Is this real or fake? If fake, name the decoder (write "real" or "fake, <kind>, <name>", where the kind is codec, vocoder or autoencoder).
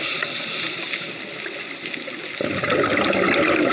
real